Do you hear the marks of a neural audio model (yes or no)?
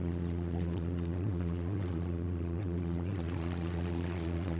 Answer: yes